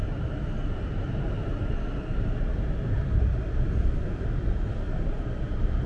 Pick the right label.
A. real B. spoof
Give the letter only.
A